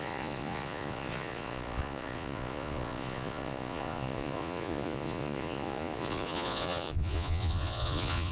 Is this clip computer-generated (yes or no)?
yes